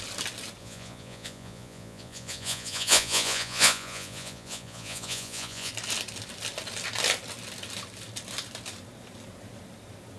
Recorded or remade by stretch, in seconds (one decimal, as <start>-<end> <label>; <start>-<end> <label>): 0.0-0.6 recorded; 0.6-5.7 remade; 5.7-10.2 recorded